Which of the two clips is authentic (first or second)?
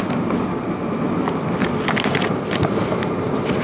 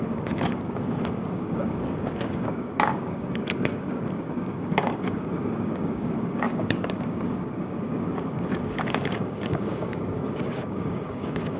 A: first